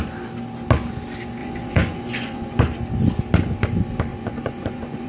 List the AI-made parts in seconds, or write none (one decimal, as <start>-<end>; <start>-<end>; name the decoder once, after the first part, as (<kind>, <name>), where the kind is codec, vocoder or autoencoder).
1.4-2.6 (vocoder, Vocos); 4.1-5.1